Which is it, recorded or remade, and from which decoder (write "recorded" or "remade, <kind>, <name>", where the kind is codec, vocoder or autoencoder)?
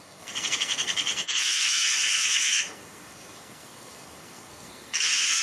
remade, codec, SNAC